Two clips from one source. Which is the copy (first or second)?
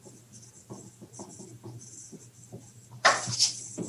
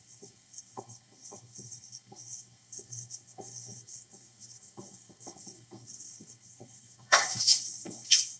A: second